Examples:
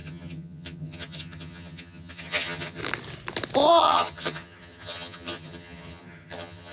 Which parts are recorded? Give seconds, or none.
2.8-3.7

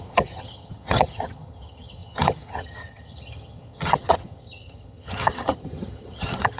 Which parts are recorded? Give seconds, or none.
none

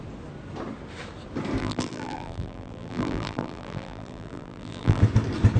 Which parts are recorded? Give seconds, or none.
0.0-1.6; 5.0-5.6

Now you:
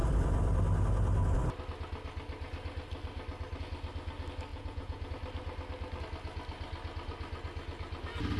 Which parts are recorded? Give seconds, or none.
0.0-4.5; 5.1-8.4

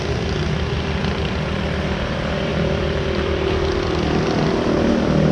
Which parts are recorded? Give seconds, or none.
0.0-2.5